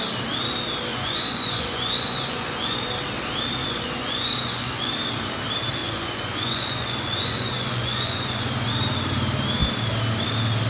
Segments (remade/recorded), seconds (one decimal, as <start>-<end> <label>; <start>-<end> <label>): 0.0-0.9 recorded; 0.9-2.8 remade; 2.8-3.6 recorded; 3.6-4.9 remade; 4.9-5.8 recorded; 5.8-8.7 remade; 8.7-10.7 recorded